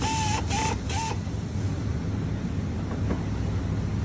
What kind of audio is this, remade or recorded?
recorded